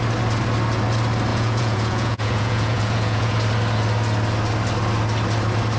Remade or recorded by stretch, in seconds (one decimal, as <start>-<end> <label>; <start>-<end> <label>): 0.0-1.3 recorded; 1.3-3.4 remade; 3.4-5.8 recorded